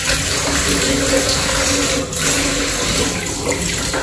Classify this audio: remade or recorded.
recorded